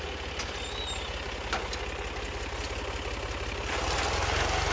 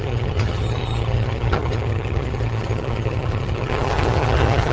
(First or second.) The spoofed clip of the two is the second